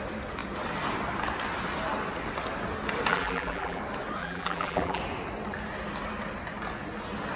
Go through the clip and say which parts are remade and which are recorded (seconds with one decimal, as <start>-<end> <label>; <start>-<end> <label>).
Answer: 0.0-3.1 recorded; 3.1-3.8 remade; 3.8-4.2 recorded; 4.2-5.0 remade; 5.0-7.4 recorded

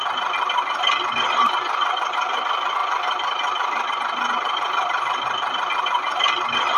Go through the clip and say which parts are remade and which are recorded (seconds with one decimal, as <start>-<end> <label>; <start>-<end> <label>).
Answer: 0.0-6.8 recorded

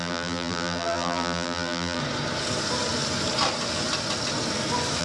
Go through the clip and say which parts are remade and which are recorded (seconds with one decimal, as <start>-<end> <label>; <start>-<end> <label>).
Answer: 0.0-2.0 remade; 2.0-5.0 recorded

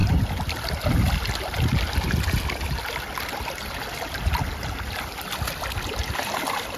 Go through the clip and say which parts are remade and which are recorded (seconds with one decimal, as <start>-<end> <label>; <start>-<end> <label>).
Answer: 0.0-6.8 recorded

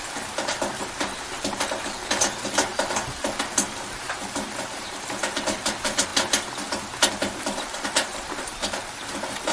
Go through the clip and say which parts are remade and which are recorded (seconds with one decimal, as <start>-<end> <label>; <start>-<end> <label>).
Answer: 0.0-6.1 remade; 6.1-7.1 recorded; 7.1-8.5 remade; 8.5-9.1 recorded; 9.1-9.5 remade

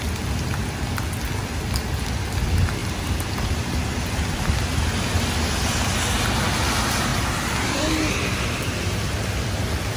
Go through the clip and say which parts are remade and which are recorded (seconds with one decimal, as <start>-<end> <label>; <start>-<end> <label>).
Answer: 0.0-2.8 recorded; 2.8-4.8 remade; 4.8-7.1 recorded; 7.1-7.8 remade; 7.8-10.0 recorded

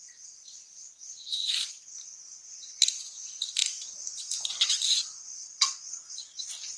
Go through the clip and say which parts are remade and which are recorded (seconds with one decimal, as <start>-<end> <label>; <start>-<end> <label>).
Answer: 0.0-6.8 recorded